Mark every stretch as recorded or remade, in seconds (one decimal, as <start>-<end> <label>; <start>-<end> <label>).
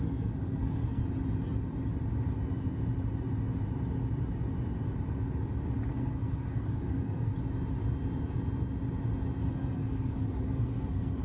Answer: 0.0-1.0 remade; 1.0-5.9 recorded; 5.9-7.3 remade; 7.3-9.5 recorded; 9.5-11.2 remade